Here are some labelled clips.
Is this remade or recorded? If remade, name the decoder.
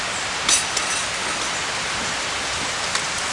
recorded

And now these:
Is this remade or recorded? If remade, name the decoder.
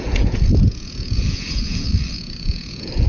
remade, vocoder, Vocos